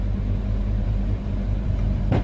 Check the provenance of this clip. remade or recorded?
remade